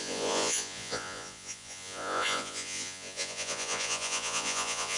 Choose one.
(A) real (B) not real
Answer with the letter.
B